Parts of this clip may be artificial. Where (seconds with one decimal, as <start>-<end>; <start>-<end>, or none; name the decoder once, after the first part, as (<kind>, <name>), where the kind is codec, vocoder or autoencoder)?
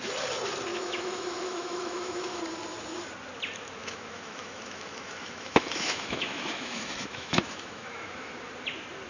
0.7-2.4 (autoencoder, DAC-VAE); 3.8-8.3